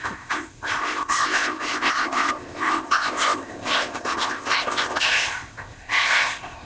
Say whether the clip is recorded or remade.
remade